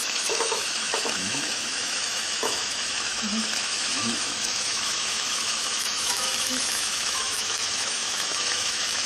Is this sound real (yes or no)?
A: no